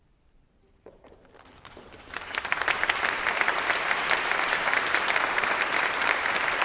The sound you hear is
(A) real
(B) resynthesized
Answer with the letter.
B